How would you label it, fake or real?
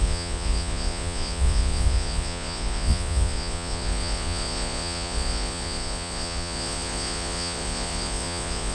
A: fake